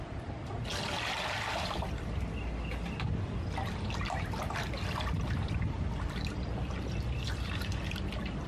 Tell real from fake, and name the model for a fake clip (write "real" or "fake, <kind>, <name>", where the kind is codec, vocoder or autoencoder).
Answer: real